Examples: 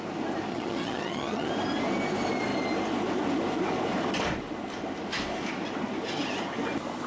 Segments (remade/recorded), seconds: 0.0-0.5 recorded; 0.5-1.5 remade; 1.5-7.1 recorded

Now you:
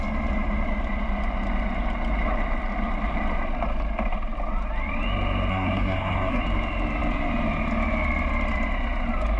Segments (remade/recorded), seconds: 0.0-5.5 recorded; 5.5-6.4 remade; 6.4-9.4 recorded

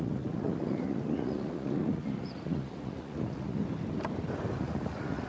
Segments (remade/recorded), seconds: 0.0-3.6 remade; 3.6-4.6 recorded; 4.6-5.3 remade

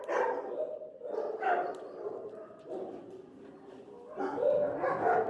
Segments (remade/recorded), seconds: 0.0-2.4 recorded; 2.4-3.4 remade; 3.4-5.3 recorded

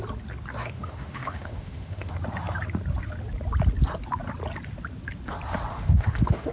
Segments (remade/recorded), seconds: 0.0-0.6 recorded; 0.6-2.1 remade; 2.1-5.7 recorded; 5.7-6.5 remade